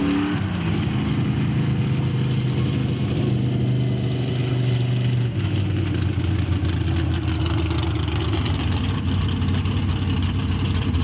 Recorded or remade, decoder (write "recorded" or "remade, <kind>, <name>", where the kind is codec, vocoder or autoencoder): recorded